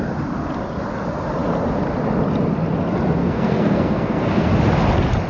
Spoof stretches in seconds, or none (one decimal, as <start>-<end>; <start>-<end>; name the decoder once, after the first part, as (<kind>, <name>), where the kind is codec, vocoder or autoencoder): 3.2-4.5 (codec, SNAC)

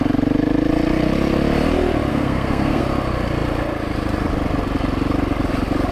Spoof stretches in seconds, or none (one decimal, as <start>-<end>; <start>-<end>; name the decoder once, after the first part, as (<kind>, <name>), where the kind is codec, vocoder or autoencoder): 2.1-2.8 (codec, SNAC)

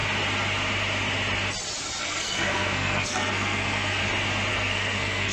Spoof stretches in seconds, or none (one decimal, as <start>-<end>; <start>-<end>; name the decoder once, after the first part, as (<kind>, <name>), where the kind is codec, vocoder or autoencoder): 2.0-4.0 (codec, SNAC); 4.5-5.3

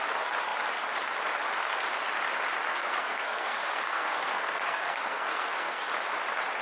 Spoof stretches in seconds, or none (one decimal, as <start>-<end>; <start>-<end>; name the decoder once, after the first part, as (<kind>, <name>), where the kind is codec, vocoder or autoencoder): 2.7-5.9 (codec, SNAC)

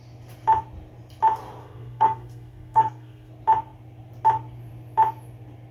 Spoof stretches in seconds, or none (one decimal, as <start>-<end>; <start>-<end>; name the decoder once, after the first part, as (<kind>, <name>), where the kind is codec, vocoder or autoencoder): 1.6-3.3 (codec, SNAC)

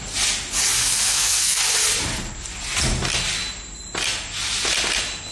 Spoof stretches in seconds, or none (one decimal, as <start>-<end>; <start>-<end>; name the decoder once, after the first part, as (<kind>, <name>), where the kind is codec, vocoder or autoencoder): 0.8-1.6 (codec, SNAC)

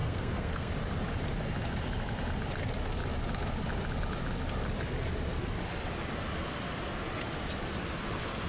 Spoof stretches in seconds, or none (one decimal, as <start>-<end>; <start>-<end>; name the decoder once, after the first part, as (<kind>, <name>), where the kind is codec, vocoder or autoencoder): 0.0-0.7 (codec, SNAC)

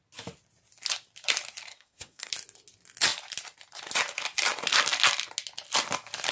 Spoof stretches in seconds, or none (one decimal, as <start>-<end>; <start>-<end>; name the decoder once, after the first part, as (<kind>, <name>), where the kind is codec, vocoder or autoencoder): 1.7-2.3 (codec, SNAC)